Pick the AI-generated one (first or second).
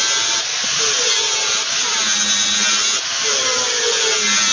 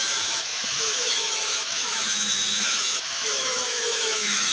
second